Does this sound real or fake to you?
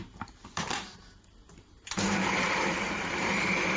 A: fake